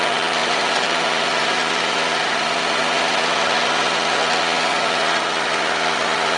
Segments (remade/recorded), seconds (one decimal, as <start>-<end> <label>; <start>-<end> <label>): 0.0-0.4 recorded; 0.4-3.2 remade; 3.2-6.4 recorded